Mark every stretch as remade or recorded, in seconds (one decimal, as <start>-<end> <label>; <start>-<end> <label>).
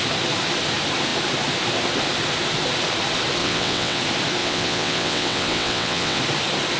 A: 0.0-3.4 recorded; 3.4-4.0 remade; 4.0-4.4 recorded; 4.4-6.2 remade; 6.2-6.8 recorded